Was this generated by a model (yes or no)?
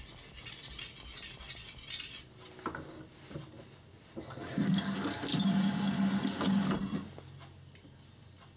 no